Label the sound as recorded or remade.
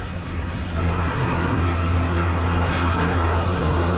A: remade